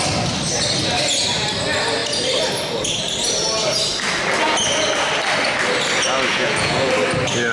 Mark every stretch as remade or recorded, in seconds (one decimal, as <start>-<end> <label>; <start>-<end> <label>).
0.0-6.3 recorded; 6.3-6.9 remade; 6.9-7.5 recorded